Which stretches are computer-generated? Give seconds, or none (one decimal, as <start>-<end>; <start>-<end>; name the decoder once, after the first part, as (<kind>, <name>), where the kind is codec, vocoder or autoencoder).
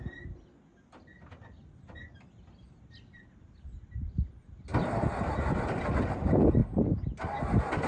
none